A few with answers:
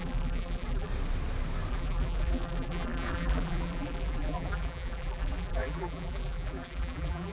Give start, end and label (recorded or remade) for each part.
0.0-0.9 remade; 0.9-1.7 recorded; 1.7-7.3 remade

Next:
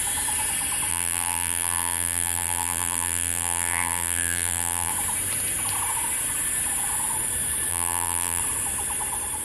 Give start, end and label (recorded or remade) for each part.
0.0-0.9 recorded; 0.9-4.9 remade; 4.9-7.7 recorded; 7.7-8.4 remade; 8.4-9.4 recorded